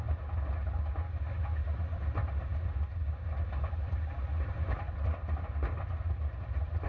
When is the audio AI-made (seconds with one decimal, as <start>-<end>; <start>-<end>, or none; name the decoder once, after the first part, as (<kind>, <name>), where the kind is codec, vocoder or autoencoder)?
none